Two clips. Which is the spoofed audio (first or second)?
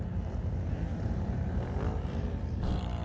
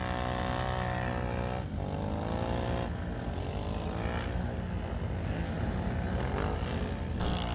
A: first